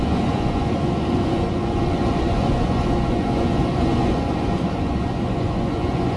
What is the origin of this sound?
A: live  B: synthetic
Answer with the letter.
B